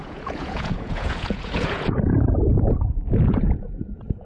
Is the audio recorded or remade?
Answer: remade